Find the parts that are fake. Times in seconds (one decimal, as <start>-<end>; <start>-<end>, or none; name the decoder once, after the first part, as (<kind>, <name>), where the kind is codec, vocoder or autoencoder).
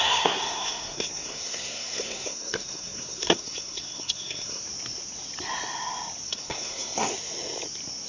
0.0-4.6 (codec, SNAC); 6.3-7.1